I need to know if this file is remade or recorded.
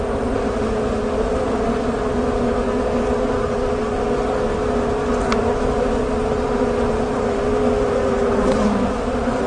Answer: recorded